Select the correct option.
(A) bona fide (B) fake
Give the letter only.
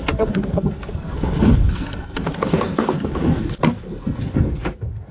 B